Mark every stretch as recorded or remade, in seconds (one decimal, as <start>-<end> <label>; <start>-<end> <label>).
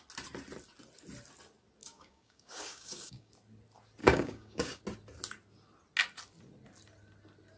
0.0-1.8 recorded; 1.8-3.3 remade; 3.3-4.0 recorded; 4.0-4.8 remade; 4.8-7.6 recorded